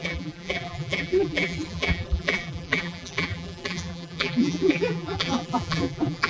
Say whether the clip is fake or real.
fake